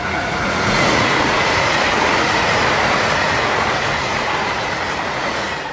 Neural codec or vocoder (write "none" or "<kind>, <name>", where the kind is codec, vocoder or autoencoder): vocoder, Vocos